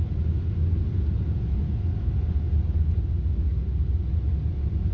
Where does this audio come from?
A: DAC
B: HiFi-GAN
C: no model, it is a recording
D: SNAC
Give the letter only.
C